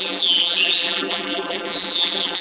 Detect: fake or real fake